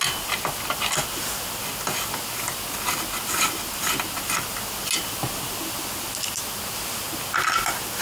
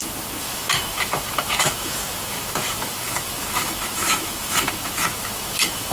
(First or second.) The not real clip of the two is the second